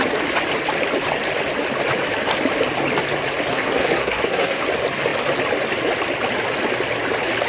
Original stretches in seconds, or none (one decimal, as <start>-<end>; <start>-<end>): 0.0-3.5; 4.6-7.5